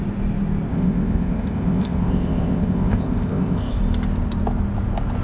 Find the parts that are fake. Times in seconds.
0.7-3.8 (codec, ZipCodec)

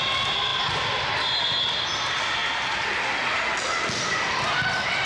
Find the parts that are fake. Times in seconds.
none